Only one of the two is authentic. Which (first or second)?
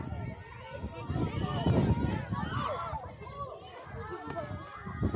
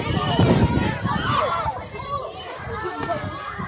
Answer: first